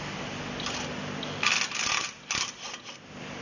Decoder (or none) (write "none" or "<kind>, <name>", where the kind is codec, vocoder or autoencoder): none